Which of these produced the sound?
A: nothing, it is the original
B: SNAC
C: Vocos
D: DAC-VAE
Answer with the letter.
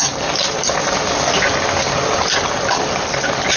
A